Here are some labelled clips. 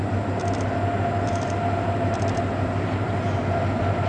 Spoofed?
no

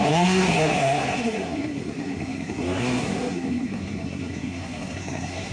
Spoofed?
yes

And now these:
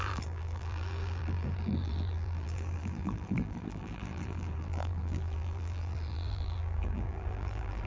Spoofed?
yes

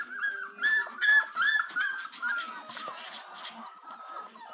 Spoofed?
no